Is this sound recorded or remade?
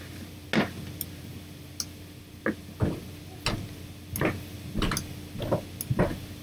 recorded